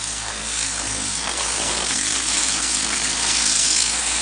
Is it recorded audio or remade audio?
remade